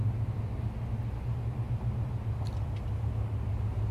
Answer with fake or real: real